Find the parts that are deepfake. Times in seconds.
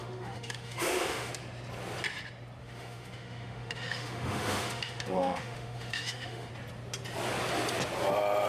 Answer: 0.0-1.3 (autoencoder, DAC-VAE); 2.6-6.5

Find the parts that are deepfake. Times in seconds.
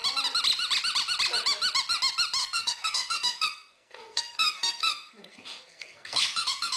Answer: 2.4-6.8 (codec, SNAC)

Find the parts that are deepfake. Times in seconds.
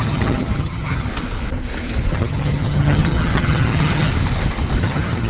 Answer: 0.0-1.1 (vocoder, HiFi-GAN); 2.1-4.1; 4.8-5.3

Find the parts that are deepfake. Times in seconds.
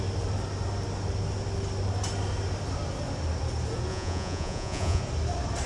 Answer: 3.9-5.0 (vocoder, Vocos)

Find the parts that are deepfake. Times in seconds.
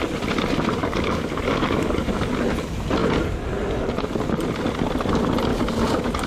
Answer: 0.8-2.3 (codec, DAC); 5.5-6.3